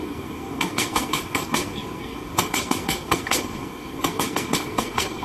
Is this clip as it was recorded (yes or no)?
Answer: no